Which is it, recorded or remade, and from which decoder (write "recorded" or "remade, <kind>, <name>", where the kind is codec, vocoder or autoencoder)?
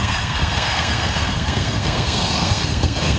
remade, codec, SNAC